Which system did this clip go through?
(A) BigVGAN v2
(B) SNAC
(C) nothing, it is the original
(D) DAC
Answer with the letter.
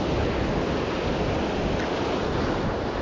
C